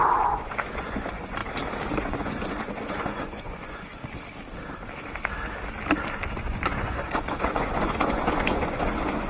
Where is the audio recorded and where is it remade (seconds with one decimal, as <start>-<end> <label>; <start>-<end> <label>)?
0.0-1.4 remade; 1.4-2.0 recorded; 2.0-3.9 remade; 3.9-6.3 recorded; 6.3-9.3 remade